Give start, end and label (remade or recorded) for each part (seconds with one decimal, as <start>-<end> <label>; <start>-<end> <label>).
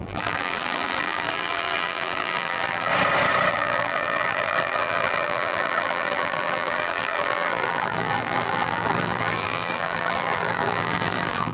0.0-2.9 remade; 2.9-3.5 recorded; 3.5-11.5 remade